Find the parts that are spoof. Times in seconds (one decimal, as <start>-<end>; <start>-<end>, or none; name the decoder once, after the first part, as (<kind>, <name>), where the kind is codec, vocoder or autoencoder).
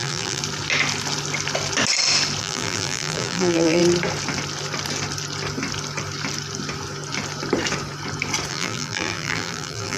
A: 0.0-0.4 (vocoder, BigVGAN v2); 2.4-3.8; 8.5-10.0